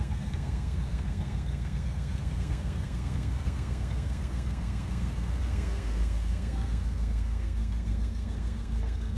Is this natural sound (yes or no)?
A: no